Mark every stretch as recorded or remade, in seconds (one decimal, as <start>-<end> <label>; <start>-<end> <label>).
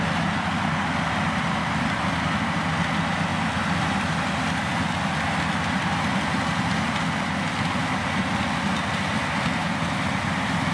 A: 0.0-10.7 recorded